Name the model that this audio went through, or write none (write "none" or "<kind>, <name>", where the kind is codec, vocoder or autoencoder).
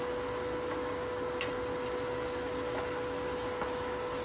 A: none